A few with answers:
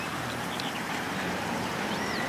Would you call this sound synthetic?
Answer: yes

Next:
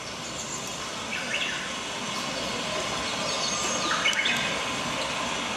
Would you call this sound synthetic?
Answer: no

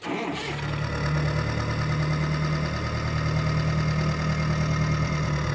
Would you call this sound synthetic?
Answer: no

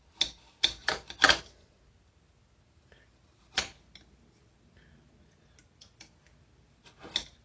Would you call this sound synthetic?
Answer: no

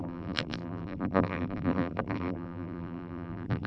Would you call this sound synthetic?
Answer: yes